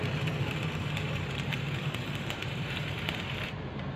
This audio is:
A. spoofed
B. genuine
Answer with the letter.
A